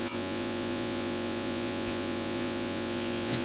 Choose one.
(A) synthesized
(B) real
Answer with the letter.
A